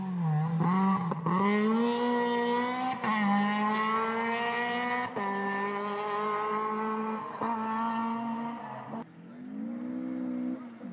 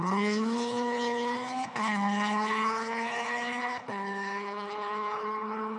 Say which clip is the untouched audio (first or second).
first